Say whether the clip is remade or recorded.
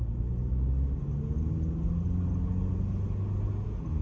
recorded